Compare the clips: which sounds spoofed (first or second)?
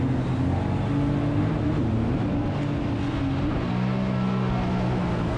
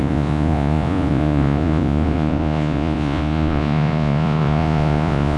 second